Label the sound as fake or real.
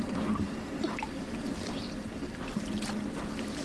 real